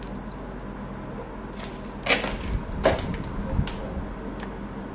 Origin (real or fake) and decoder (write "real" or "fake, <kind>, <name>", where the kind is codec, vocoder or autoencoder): real